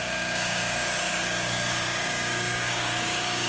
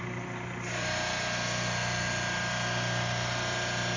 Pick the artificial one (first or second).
first